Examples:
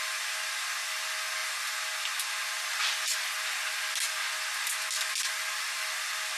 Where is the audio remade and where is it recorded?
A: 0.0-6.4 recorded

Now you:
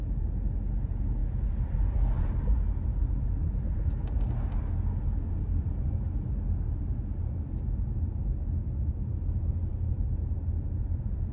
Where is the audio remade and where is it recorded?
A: 0.0-2.9 recorded; 2.9-3.5 remade; 3.5-11.3 recorded

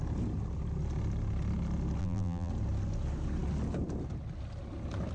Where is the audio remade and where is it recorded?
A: 0.0-2.0 recorded; 2.0-2.5 remade; 2.5-5.1 recorded

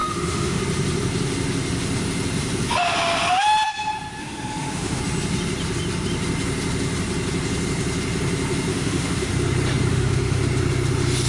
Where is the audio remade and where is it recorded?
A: 0.0-0.6 remade; 0.6-4.2 recorded; 4.2-5.0 remade; 5.0-8.7 recorded; 8.7-9.3 remade; 9.3-9.9 recorded; 9.9-10.4 remade; 10.4-11.3 recorded

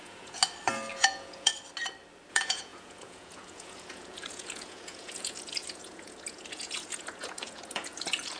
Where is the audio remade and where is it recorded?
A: 0.0-0.4 remade; 0.4-0.9 recorded; 0.9-1.5 remade; 1.5-2.3 recorded; 2.3-8.4 remade

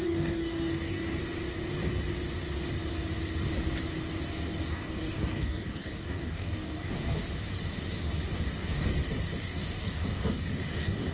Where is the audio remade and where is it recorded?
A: 0.0-1.2 remade; 1.2-4.7 recorded; 4.7-7.2 remade; 7.2-8.3 recorded; 8.3-8.9 remade; 8.9-9.4 recorded; 9.4-11.1 remade

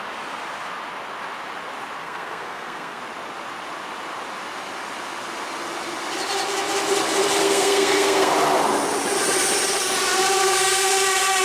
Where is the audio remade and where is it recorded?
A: 0.0-2.0 recorded; 2.0-3.0 remade; 3.0-7.4 recorded; 7.4-8.3 remade; 8.3-10.4 recorded; 10.4-10.9 remade; 10.9-11.4 recorded

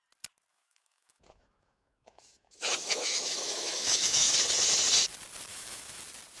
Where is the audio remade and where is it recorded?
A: 0.0-0.5 recorded; 0.5-4.3 remade; 4.3-5.5 recorded; 5.5-6.0 remade; 6.0-6.4 recorded